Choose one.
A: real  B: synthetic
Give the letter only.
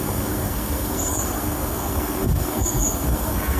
B